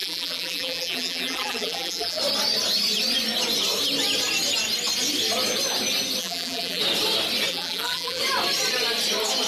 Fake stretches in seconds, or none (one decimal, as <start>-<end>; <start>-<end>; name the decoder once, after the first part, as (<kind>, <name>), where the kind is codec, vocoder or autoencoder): 0.0-2.2 (vocoder, BigVGAN v2); 6.2-6.8; 7.5-8.2

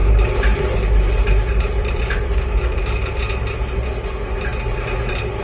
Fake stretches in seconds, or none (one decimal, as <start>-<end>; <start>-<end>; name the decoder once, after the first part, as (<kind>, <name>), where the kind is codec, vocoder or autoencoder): 0.0-3.2 (vocoder, BigVGAN v2)

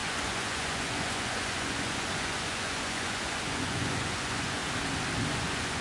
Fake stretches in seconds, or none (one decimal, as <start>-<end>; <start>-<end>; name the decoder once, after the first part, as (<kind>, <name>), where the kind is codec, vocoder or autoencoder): 0.0-4.6 (vocoder, Vocos); 5.3-5.8

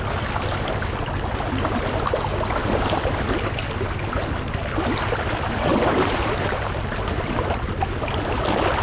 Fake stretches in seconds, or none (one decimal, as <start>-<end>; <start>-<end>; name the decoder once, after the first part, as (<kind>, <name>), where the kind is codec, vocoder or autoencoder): 5.7-8.3 (vocoder, BigVGAN v2)

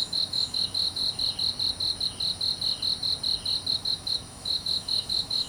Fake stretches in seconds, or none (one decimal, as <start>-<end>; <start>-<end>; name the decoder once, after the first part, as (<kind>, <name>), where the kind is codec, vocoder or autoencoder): 0.0-1.0 (autoencoder, DAC-VAE); 3.7-5.5